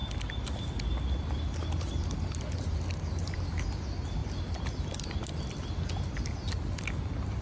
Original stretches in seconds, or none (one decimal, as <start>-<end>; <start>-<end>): 0.0-7.4